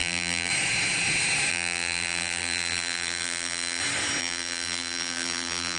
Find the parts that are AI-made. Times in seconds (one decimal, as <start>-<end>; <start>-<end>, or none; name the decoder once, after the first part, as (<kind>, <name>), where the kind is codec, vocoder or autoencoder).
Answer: 0.0-0.5 (vocoder, BigVGAN v2); 1.5-3.8; 4.2-5.8